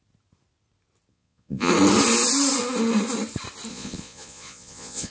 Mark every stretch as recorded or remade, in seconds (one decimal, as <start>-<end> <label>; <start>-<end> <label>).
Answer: 0.0-1.1 recorded; 1.1-1.7 remade; 1.7-3.7 recorded; 3.7-5.1 remade